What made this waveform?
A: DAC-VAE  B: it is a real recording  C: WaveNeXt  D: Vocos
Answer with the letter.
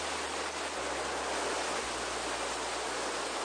B